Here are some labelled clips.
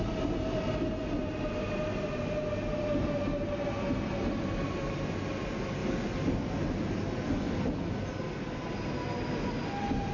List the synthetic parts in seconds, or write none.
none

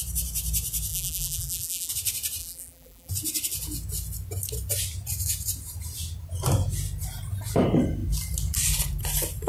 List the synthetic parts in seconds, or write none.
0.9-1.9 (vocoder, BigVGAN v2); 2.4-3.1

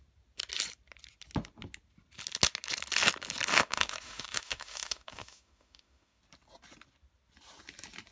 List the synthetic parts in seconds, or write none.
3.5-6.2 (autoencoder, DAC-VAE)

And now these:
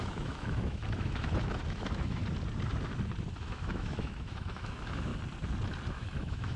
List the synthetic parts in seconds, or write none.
0.0-2.2 (autoencoder, DAC-VAE); 3.4-5.1; 5.9-6.6

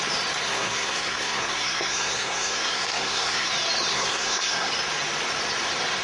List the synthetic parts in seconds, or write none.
0.4-3.5 (codec, SNAC); 3.9-4.7